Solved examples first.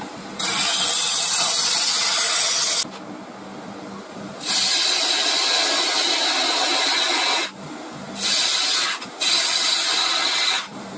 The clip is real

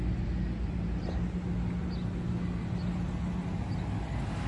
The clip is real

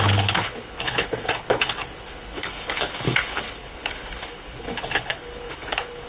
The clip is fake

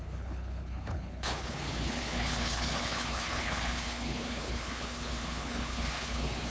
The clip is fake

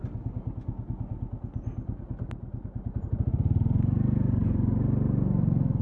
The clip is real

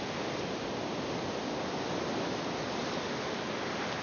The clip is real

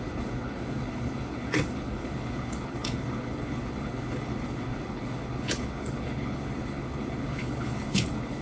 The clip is fake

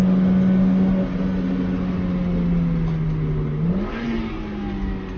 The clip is real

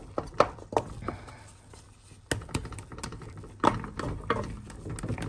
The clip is real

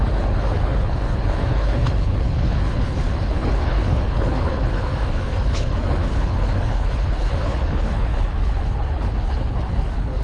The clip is fake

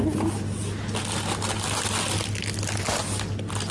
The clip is real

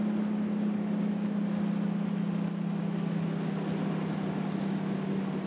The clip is real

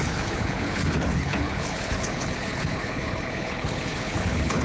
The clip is fake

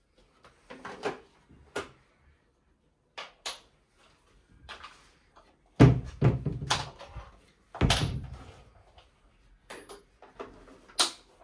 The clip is real